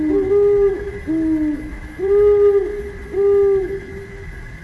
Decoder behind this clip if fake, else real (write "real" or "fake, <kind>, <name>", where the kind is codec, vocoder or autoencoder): real